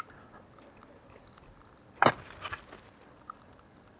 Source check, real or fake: real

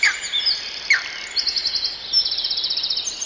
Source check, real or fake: real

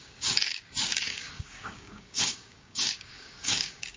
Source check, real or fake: fake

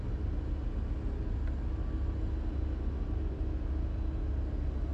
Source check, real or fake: real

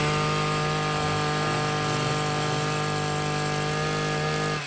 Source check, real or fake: real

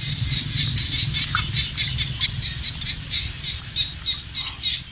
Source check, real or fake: real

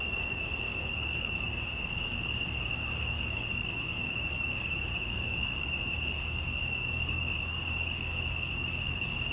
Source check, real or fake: fake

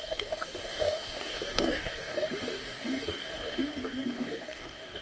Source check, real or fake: fake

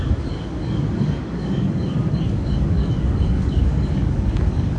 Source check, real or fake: fake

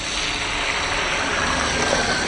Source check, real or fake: real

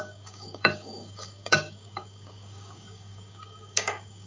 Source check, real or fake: fake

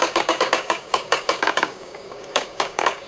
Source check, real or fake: fake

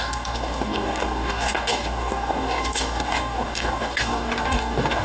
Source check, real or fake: fake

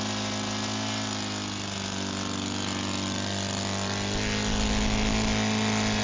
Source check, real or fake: real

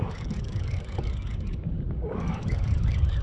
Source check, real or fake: fake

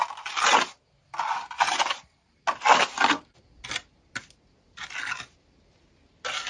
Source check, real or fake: real